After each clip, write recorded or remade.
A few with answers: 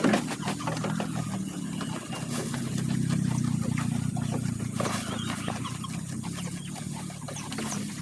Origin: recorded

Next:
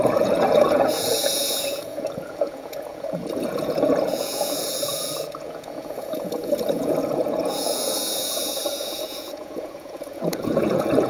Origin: remade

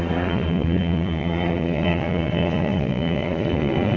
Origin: remade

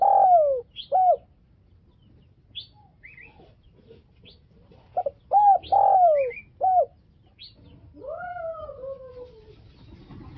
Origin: recorded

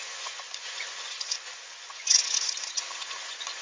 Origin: remade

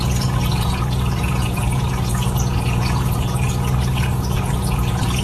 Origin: remade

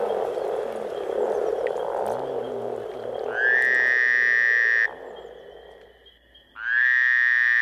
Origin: recorded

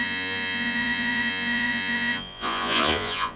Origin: remade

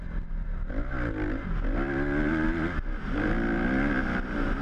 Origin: recorded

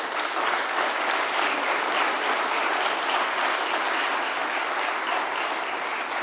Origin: recorded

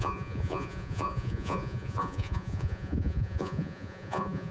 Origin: remade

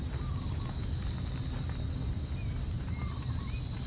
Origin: recorded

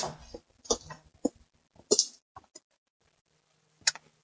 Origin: recorded